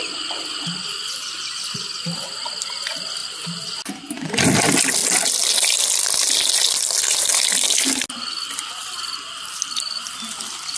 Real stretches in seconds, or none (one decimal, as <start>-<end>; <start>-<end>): 0.0-5.0; 5.5-8.8